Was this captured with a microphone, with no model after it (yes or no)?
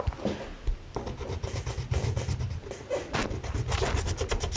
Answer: yes